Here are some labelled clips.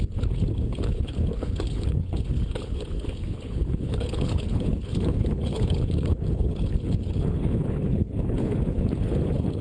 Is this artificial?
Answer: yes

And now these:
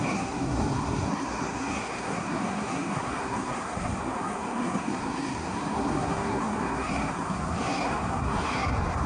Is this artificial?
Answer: yes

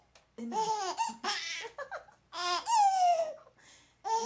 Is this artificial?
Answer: no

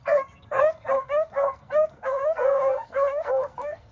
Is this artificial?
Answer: yes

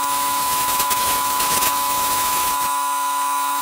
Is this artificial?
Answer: yes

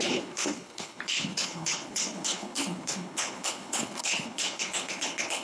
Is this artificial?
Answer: yes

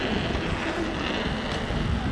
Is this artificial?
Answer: no